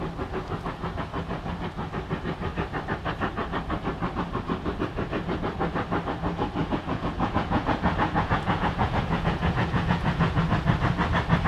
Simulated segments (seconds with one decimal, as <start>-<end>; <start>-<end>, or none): 6.6-10.4